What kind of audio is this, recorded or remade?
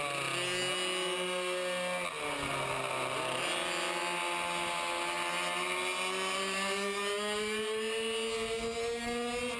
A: recorded